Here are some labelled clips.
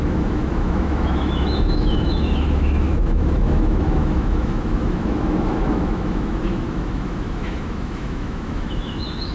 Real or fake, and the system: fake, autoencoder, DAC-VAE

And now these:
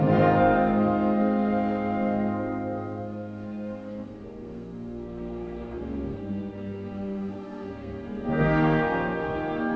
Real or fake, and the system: fake, codec, SNAC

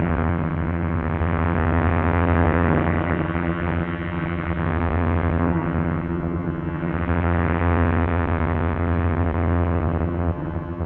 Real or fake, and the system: fake, vocoder, HiFi-GAN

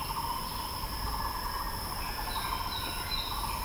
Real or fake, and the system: real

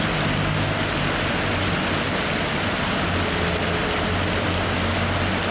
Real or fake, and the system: real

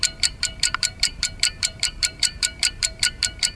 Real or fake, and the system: fake, vocoder, BigVGAN v2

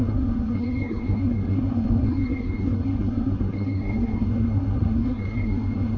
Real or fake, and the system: fake, codec, SNAC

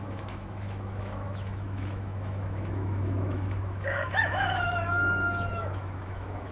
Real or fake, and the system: fake, autoencoder, DAC-VAE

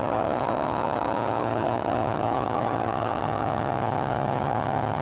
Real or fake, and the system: fake, vocoder, HiFi-GAN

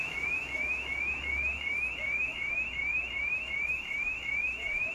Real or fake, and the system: fake, autoencoder, DAC-VAE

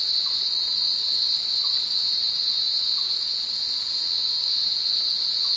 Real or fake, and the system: real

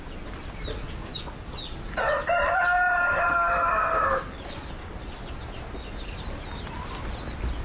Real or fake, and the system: real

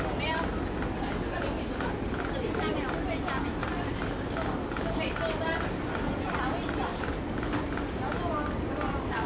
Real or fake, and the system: real